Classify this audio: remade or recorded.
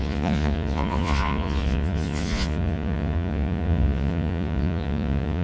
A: remade